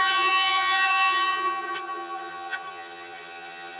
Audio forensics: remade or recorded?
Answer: remade